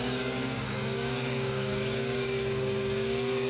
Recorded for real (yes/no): no